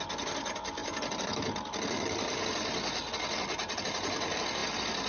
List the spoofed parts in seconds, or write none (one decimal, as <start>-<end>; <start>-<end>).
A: none